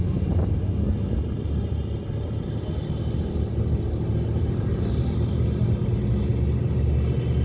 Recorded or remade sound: recorded